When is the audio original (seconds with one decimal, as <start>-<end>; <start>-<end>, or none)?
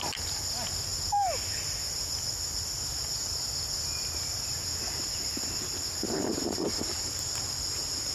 0.0-8.1